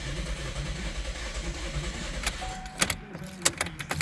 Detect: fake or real real